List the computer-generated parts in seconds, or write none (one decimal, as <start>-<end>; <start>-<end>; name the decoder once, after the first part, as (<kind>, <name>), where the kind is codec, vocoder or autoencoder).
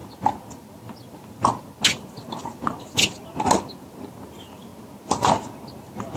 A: none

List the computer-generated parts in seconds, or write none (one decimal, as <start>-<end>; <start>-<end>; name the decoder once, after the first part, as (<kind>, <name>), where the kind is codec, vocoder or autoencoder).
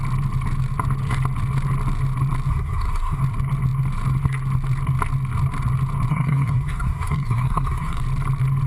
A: 2.5-3.2 (codec, SNAC); 6.1-8.0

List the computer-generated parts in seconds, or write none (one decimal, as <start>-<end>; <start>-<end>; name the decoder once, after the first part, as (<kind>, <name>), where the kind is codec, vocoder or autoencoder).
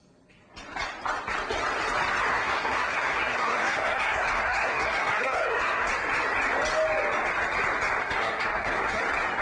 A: 2.3-5.9 (codec, SNAC); 8.0-9.0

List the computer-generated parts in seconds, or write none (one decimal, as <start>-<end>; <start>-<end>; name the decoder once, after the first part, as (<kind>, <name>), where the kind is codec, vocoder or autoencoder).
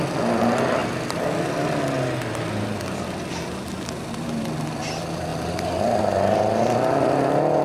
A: none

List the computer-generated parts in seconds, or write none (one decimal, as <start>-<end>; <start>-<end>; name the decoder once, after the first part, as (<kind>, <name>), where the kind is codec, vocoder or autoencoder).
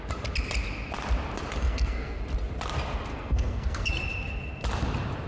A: 1.6-2.2 (codec, SNAC); 3.1-3.9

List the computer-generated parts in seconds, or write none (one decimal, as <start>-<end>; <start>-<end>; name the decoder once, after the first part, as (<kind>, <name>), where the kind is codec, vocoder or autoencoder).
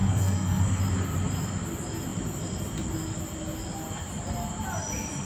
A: 0.0-0.8 (codec, SNAC)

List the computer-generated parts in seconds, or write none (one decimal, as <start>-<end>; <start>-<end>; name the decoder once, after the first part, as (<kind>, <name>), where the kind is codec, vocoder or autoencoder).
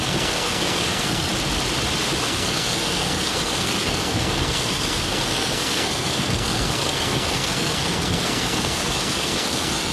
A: 0.0-1.3 (codec, SNAC); 2.2-9.9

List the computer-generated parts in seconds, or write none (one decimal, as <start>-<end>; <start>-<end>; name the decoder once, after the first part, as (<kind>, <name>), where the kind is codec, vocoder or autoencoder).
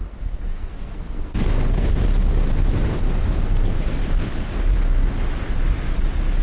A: 0.0-1.9 (codec, SNAC); 2.9-4.0